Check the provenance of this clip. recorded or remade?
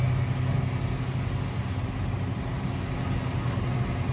recorded